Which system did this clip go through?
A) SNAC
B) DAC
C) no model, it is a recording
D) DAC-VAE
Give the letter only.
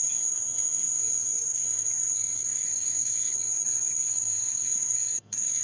A